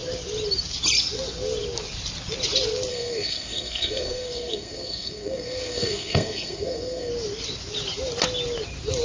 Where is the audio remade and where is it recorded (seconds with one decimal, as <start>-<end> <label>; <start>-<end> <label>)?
0.0-2.9 recorded; 2.9-7.1 remade; 7.1-9.0 recorded